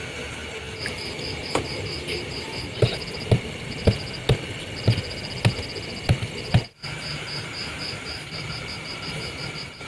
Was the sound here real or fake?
real